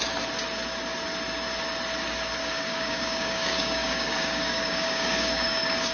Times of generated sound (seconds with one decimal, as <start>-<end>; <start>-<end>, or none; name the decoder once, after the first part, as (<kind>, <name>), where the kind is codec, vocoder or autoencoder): 2.4-5.9 (codec, DAC)